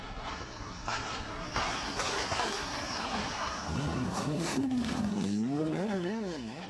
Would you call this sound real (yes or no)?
no